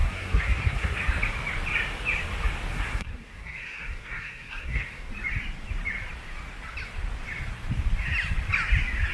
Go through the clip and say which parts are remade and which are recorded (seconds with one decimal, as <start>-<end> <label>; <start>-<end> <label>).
0.0-1.0 remade; 1.0-2.7 recorded; 2.7-5.1 remade; 5.1-9.1 recorded